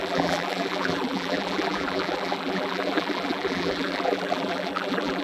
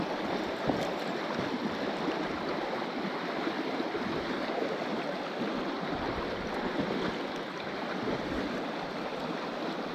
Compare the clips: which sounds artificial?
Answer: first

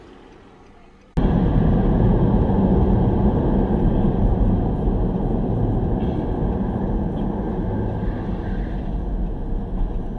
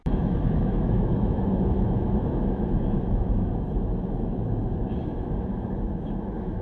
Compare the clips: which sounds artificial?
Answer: second